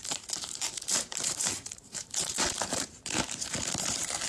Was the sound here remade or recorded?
remade